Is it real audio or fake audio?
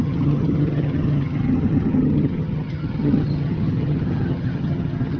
fake